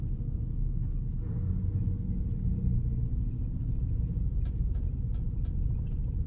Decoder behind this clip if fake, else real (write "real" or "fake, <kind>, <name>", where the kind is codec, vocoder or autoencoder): real